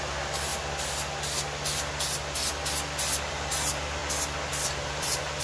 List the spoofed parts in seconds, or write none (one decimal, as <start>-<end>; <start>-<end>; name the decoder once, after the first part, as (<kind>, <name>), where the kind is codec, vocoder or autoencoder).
0.0-0.5 (vocoder, BigVGAN v2); 3.3-4.0; 4.5-5.4